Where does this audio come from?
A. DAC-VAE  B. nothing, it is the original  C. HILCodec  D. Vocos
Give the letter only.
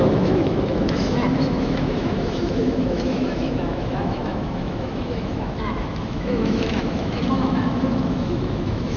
A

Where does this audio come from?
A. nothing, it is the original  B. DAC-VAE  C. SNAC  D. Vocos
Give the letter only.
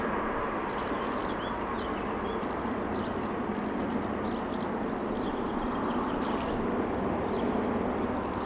A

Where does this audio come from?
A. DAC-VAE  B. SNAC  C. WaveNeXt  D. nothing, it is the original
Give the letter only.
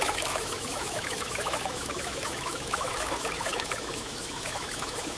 A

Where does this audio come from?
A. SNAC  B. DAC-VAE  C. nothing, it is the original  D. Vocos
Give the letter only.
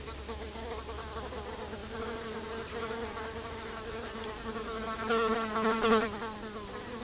C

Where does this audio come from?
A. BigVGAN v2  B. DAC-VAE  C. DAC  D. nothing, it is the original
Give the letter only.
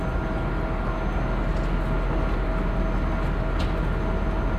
D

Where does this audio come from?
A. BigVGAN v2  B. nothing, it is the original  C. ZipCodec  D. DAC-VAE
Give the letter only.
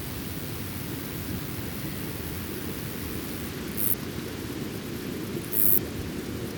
B